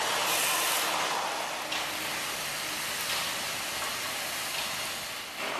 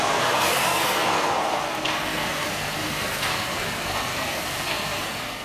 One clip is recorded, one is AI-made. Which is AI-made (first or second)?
second